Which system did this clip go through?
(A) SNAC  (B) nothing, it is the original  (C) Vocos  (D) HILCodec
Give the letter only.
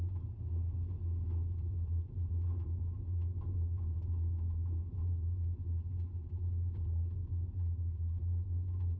B